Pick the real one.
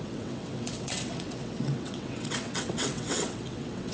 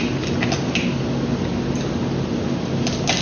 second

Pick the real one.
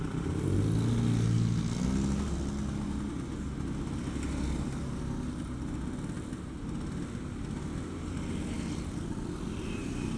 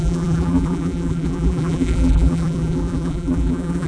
first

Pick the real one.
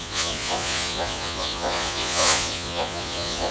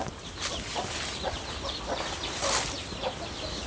second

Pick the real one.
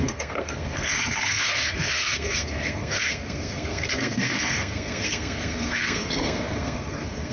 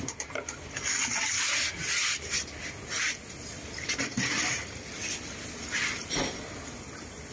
second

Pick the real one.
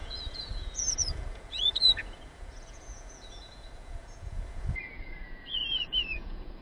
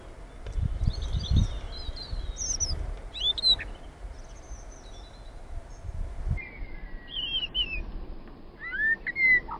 second